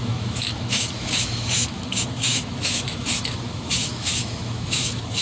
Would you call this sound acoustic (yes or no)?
no